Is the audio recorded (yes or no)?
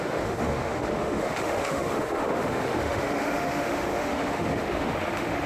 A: no